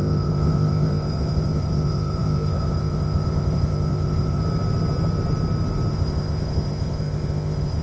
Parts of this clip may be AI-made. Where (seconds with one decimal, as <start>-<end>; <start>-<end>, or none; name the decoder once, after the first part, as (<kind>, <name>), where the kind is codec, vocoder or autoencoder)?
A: 0.0-4.4 (codec, ZipCodec); 5.9-7.8